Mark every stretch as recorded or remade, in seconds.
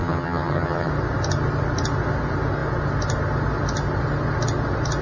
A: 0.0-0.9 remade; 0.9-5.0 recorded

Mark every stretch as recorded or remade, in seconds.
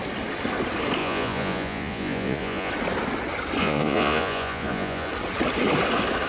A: 0.0-1.0 recorded; 1.0-2.7 remade; 2.7-3.6 recorded; 3.6-5.1 remade; 5.1-6.3 recorded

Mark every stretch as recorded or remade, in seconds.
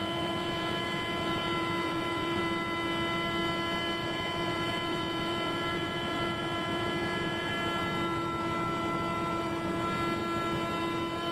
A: 0.0-2.4 remade; 2.4-4.0 recorded; 4.0-7.5 remade; 7.5-11.3 recorded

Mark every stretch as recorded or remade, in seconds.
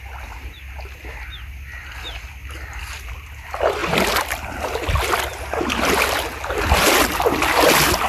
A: 0.0-8.1 recorded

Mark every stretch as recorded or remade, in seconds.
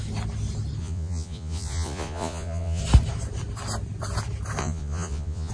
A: 0.0-0.8 recorded; 0.8-2.8 remade; 2.8-4.6 recorded; 4.6-5.5 remade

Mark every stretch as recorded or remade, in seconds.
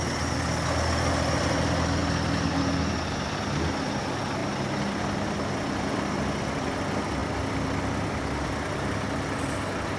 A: 0.0-4.4 recorded; 4.4-6.6 remade; 6.6-7.2 recorded; 7.2-8.5 remade; 8.5-10.0 recorded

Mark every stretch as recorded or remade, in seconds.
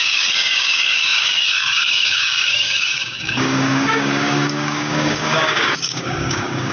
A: 0.0-6.7 remade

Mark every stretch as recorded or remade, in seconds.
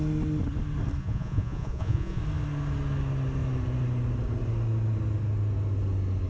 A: 0.0-1.0 recorded; 1.0-2.2 remade; 2.2-6.3 recorded